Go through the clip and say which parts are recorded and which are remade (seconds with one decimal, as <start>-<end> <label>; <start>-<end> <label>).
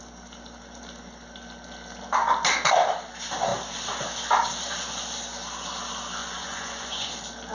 0.0-6.2 recorded; 6.2-7.1 remade; 7.1-7.5 recorded